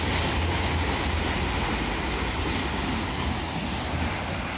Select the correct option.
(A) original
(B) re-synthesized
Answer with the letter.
A